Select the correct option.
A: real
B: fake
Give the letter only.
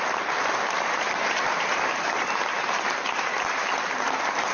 B